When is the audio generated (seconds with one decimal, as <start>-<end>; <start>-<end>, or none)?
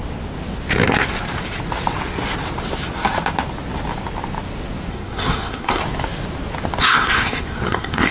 4.9-5.8; 6.8-8.1